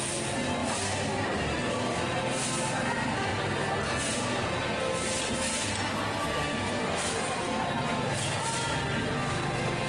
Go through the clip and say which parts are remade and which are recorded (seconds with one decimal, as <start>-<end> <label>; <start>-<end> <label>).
0.0-9.9 recorded